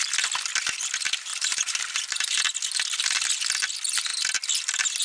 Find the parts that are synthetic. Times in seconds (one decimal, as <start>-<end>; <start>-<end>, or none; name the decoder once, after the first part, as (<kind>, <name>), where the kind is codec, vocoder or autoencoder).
1.3-2.4 (vocoder, BigVGAN v2)